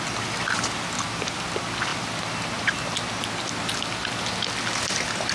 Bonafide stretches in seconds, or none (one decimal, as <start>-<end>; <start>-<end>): 0.0-5.3